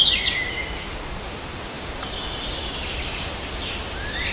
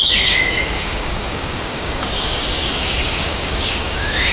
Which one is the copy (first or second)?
second